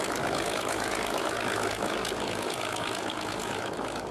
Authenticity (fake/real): fake